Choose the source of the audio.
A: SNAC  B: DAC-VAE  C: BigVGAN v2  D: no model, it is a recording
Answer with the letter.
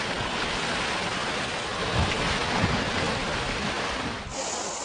D